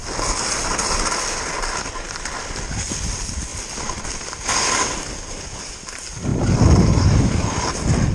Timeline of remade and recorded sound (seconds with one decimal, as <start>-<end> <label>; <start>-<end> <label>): 0.0-8.1 recorded